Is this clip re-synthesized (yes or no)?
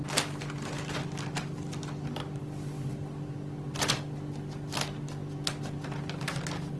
no